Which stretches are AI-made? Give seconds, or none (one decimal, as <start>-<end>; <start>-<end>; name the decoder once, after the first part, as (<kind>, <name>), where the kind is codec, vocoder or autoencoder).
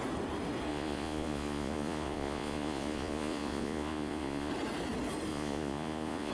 0.7-4.5 (vocoder, Vocos); 5.3-6.3